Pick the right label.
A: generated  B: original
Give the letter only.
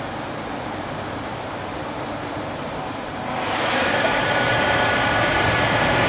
A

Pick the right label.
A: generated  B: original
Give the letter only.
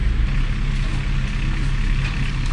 B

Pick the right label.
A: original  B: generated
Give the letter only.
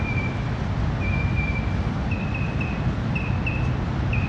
A